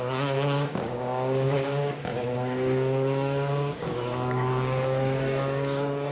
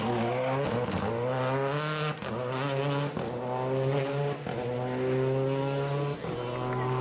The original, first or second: second